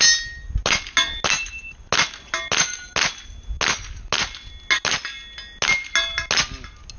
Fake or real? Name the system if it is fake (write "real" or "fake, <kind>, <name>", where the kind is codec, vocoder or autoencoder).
real